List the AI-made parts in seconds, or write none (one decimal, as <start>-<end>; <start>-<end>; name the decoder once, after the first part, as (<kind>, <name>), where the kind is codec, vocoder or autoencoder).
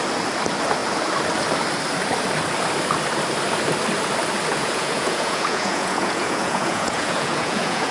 4.5-7.9 (vocoder, Vocos)